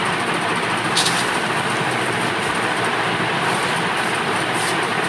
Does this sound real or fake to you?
real